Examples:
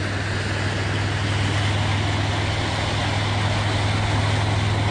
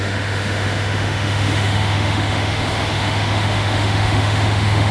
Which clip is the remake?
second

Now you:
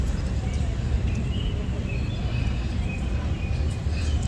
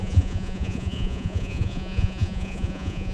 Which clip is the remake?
second